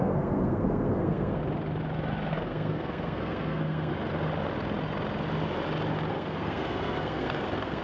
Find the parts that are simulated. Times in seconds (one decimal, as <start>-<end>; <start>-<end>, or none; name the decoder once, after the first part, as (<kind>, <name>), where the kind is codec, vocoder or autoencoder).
0.0-1.4 (codec, SNAC); 2.3-3.9; 6.1-7.8